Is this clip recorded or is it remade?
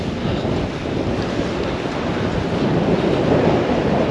recorded